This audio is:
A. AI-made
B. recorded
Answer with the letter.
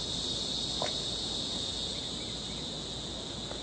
B